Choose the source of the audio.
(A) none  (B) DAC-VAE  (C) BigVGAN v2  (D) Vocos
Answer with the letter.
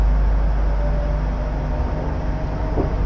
A